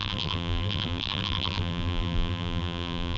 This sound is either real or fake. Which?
fake